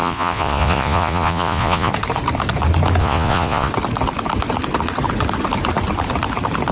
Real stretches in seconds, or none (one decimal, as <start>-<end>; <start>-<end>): 1.9-3.0; 3.7-6.7